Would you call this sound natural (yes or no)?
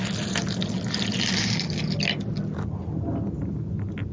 yes